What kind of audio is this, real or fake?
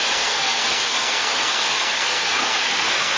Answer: fake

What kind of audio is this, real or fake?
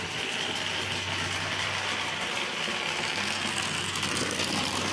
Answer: real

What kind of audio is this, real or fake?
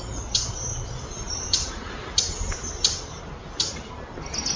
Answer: real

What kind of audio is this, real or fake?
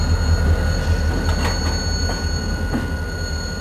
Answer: real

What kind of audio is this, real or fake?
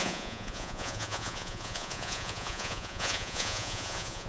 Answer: fake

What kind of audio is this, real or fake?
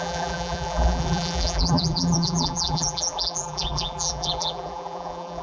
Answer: fake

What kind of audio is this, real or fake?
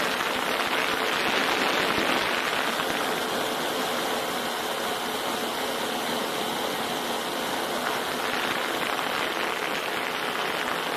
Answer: real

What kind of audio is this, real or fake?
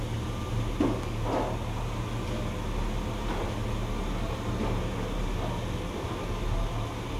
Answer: real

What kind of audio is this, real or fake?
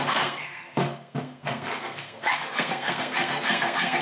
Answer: fake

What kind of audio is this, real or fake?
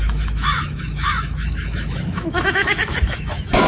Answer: fake